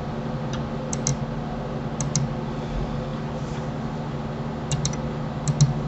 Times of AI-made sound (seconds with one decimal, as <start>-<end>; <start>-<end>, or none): none